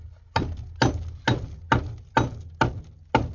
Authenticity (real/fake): real